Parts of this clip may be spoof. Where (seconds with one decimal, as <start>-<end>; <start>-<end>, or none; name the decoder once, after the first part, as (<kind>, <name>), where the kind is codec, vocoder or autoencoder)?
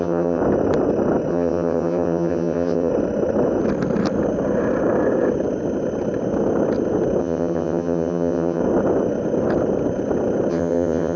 0.0-0.4 (vocoder, HiFi-GAN); 1.3-2.9; 7.2-8.6; 10.5-11.2